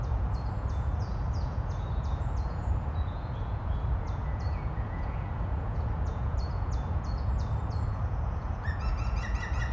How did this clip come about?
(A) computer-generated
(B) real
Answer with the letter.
A